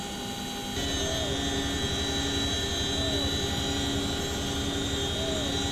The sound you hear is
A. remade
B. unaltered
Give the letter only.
B